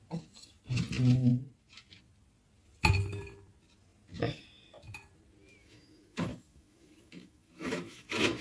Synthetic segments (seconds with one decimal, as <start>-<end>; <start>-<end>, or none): 5.6-8.4